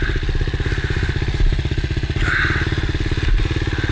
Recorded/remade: recorded